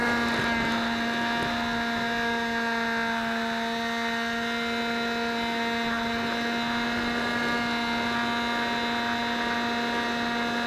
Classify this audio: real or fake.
real